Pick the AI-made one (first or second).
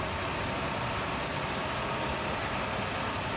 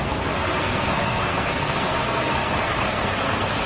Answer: second